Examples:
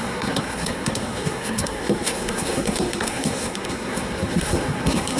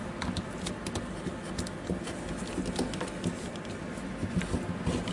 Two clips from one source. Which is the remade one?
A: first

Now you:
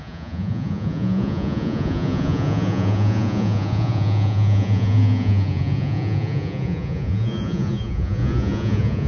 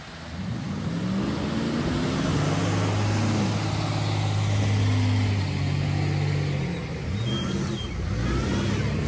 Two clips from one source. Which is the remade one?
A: first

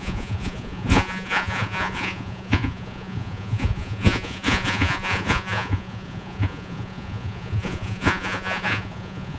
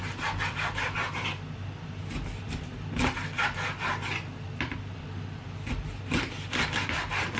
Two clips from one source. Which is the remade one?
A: first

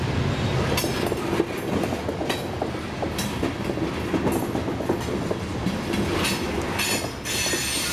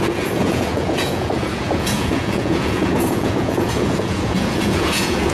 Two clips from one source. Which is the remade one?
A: second